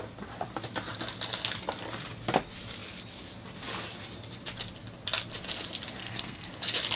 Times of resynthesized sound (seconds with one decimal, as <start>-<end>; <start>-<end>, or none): 6.0-6.5